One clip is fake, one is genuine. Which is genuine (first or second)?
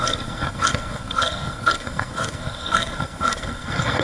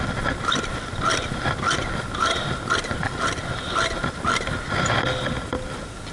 second